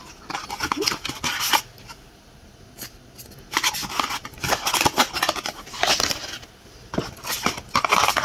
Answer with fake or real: real